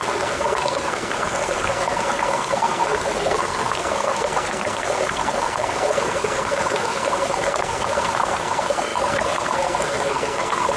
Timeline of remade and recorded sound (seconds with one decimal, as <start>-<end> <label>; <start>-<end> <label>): 0.0-10.8 remade